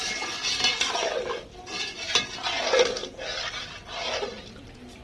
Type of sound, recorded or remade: recorded